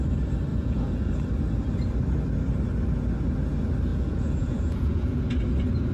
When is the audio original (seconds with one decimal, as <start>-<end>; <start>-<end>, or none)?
0.0-0.5; 1.1-3.9; 5.3-5.9